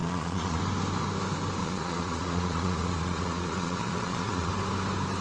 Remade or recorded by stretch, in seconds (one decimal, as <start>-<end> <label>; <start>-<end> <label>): 0.0-0.6 remade; 0.6-1.6 recorded; 1.6-4.5 remade; 4.5-5.2 recorded